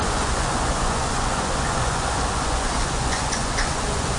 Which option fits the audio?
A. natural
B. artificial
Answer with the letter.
B